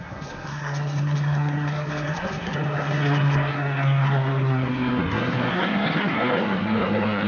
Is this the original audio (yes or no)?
no